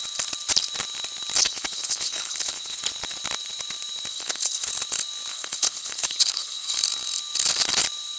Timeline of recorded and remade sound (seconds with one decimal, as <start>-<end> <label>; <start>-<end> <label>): 0.0-1.4 recorded; 1.4-2.8 remade; 2.8-4.1 recorded; 4.1-4.7 remade; 4.7-5.3 recorded; 5.3-6.8 remade; 6.8-8.2 recorded